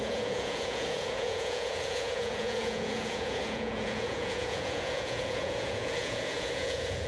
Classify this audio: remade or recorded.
remade